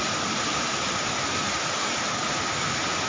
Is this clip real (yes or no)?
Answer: yes